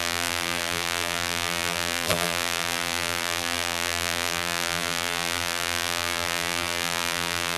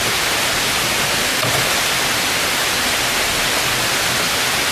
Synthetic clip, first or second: first